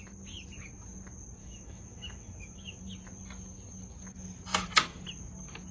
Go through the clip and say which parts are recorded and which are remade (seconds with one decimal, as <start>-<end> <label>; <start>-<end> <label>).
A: 0.0-1.4 recorded; 1.4-2.8 remade; 2.8-5.7 recorded